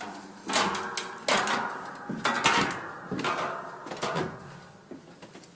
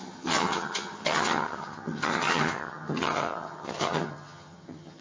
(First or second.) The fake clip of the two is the second